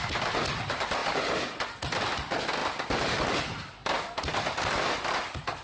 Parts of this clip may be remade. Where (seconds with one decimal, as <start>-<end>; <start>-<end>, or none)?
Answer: none